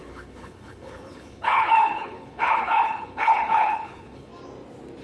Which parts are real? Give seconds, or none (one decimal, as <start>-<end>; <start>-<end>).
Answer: 4.3-5.0